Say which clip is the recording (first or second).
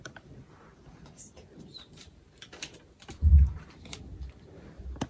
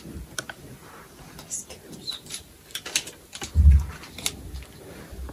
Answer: second